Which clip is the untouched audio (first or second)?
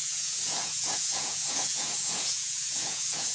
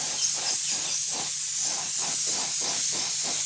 second